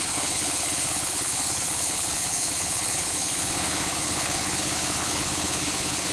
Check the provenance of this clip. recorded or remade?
remade